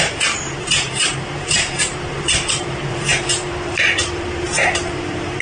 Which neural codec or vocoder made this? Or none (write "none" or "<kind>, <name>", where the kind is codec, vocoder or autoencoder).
vocoder, BigVGAN v2